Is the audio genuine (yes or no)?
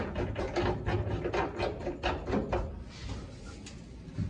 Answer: yes